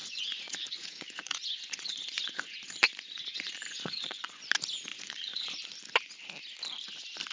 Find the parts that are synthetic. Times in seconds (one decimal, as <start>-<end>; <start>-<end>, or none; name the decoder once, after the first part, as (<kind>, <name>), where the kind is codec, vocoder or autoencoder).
0.0-4.4 (vocoder, Vocos); 4.9-5.5